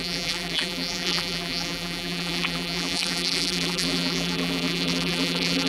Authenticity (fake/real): fake